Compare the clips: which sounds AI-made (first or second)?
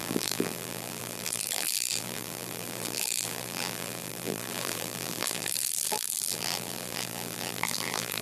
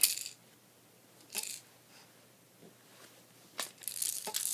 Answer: first